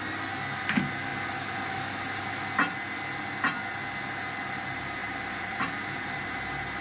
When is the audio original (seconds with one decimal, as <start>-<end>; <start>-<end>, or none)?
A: 0.0-5.0; 6.2-6.8